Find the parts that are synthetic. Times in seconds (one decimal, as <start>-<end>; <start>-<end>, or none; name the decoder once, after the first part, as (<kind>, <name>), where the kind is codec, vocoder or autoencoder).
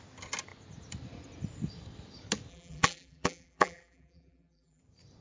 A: 2.5-4.8 (vocoder, BigVGAN v2)